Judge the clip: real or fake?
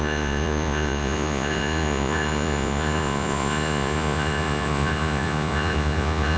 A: fake